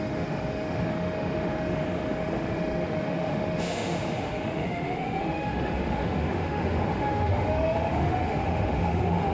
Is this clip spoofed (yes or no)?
yes